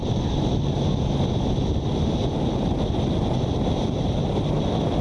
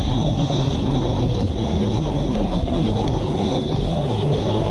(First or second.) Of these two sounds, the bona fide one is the first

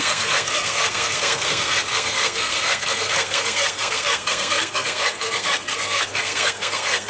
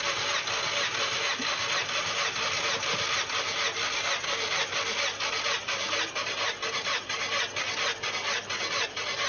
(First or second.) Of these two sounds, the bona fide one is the second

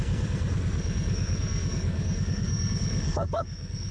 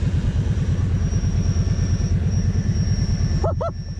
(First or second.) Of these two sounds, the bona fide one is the second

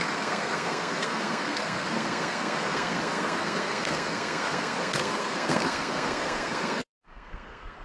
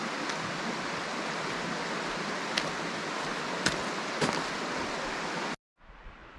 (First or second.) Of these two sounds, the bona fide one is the second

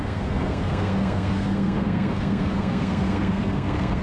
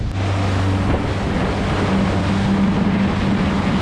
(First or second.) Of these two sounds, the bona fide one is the second